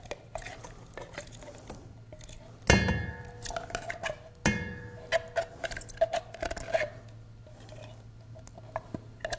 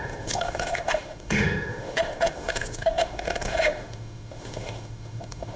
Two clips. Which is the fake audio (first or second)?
second